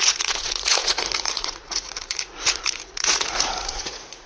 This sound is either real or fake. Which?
fake